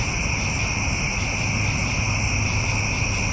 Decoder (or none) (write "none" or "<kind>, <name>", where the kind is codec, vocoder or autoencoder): none